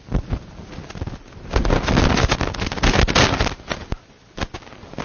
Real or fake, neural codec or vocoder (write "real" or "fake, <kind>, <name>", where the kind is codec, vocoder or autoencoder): real